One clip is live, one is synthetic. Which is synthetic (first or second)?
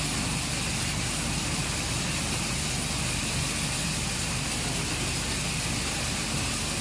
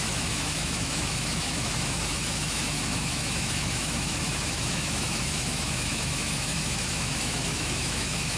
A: second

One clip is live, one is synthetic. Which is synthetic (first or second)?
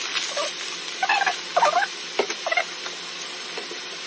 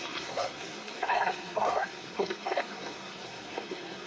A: second